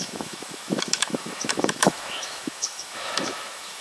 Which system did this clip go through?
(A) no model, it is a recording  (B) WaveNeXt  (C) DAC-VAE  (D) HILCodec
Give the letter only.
C